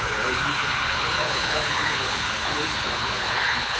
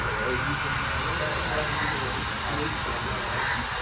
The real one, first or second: second